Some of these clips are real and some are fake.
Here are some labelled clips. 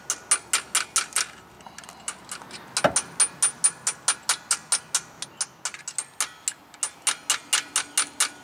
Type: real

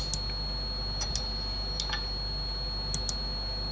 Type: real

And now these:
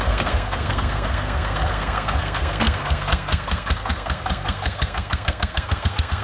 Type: fake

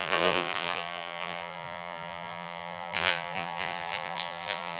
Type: fake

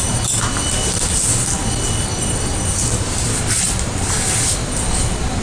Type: real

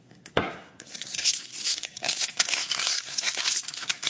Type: fake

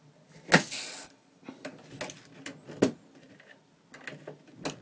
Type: real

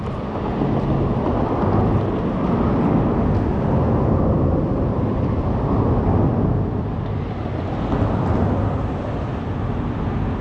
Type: real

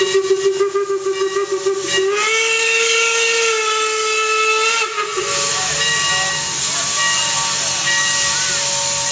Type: real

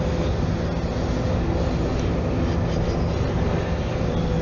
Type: real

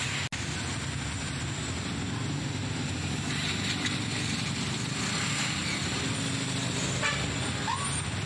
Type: real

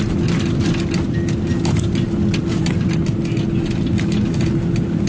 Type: real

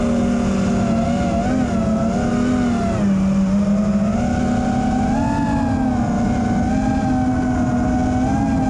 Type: real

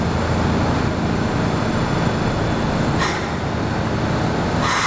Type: real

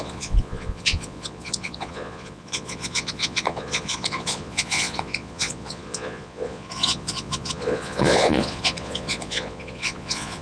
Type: fake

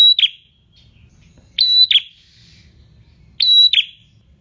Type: real